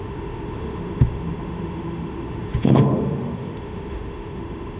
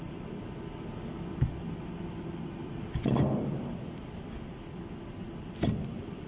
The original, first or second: second